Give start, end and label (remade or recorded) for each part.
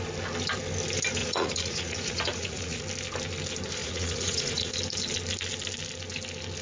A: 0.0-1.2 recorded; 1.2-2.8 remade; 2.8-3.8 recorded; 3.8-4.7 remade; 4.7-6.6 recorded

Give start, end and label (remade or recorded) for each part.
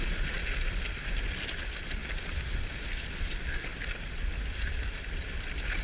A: 0.0-5.8 recorded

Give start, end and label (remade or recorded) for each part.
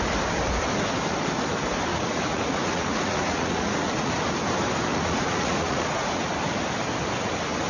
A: 0.0-1.9 recorded; 1.9-4.1 remade; 4.1-4.9 recorded; 4.9-6.3 remade; 6.3-7.7 recorded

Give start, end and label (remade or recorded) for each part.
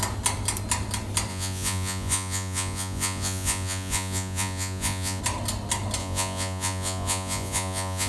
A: 0.0-1.3 recorded; 1.3-5.2 remade; 5.2-6.0 recorded; 6.0-8.1 remade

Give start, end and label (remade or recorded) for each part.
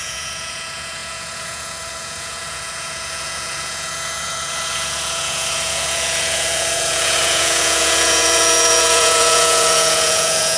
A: 0.0-10.6 remade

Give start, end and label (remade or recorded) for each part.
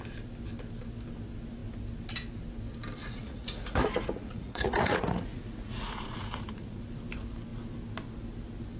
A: 0.0-3.0 recorded; 3.0-6.8 remade; 6.8-8.8 recorded